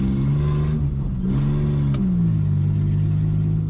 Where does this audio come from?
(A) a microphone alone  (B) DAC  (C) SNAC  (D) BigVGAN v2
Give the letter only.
A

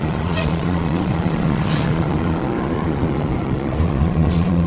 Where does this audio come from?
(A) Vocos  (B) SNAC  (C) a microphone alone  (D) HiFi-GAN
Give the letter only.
A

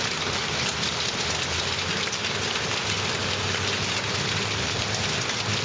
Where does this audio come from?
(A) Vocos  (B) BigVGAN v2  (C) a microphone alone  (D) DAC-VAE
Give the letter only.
C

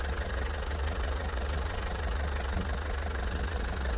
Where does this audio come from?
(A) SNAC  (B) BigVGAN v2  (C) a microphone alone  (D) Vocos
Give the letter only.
D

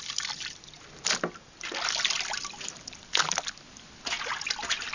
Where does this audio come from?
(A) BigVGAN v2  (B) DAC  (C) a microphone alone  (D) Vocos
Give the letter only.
C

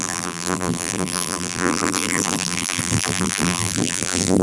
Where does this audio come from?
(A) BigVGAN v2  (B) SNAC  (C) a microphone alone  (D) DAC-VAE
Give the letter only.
A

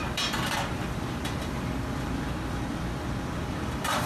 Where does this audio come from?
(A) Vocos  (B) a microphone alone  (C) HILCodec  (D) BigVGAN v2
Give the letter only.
D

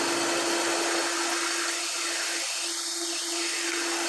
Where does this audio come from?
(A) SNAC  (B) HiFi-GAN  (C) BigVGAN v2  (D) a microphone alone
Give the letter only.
D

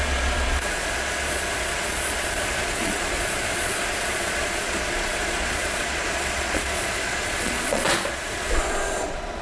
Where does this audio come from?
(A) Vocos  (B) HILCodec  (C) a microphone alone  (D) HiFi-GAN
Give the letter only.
A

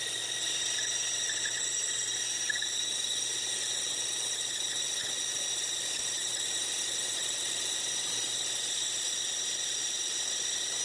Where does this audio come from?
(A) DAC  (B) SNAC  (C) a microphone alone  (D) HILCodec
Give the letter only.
C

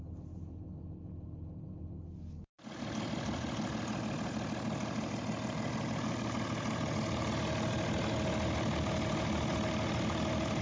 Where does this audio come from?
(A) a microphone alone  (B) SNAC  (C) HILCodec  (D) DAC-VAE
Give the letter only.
A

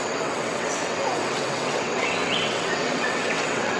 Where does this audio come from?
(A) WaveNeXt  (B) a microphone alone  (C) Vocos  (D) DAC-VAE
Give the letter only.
A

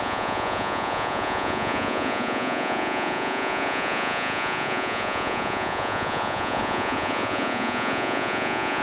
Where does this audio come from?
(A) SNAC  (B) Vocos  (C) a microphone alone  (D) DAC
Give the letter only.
B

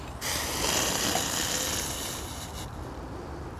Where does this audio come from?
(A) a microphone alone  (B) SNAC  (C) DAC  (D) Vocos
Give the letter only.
A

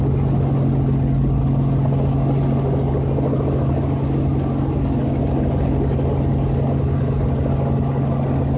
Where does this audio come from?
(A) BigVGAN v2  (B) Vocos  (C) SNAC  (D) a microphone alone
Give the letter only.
D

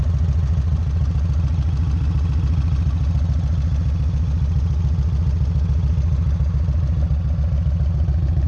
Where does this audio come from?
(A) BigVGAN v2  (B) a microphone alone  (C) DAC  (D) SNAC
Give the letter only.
B